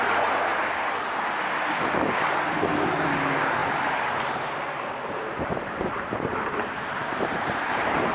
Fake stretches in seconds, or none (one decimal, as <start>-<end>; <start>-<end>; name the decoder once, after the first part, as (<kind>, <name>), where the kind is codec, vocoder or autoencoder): 3.6-8.1 (vocoder, BigVGAN v2)